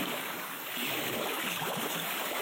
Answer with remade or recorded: remade